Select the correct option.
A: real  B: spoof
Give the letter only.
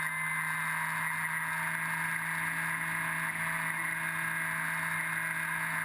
A